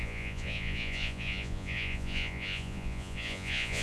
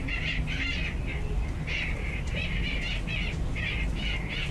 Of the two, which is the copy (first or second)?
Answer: first